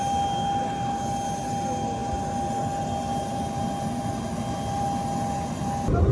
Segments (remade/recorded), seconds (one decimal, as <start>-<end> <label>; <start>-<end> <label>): 0.0-6.1 recorded